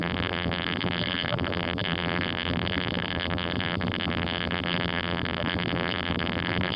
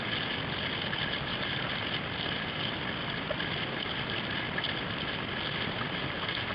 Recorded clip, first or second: second